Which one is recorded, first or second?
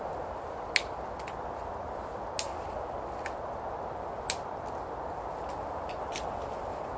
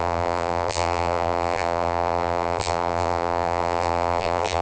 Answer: first